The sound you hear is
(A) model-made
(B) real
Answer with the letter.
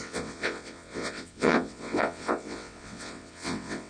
A